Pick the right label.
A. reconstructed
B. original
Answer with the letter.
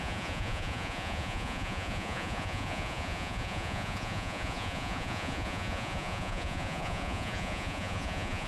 A